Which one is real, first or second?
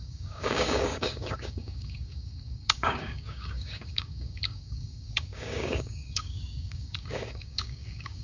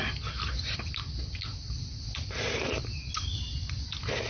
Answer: second